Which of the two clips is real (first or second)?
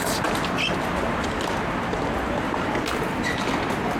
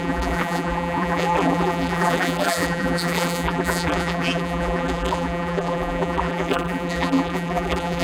first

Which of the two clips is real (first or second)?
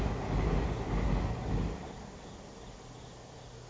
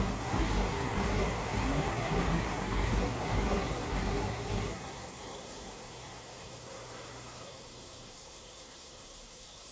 first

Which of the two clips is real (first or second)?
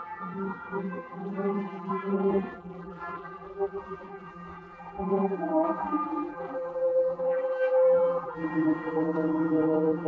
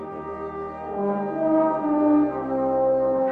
second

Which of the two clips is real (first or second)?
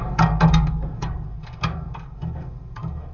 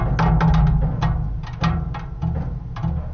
second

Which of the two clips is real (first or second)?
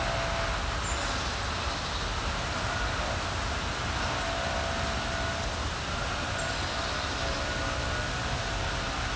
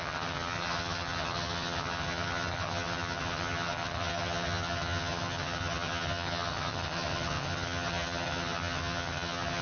first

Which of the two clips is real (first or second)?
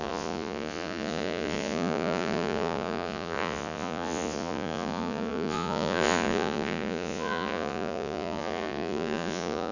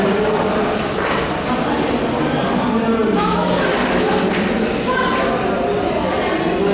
second